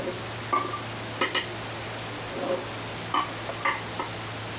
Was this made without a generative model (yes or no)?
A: yes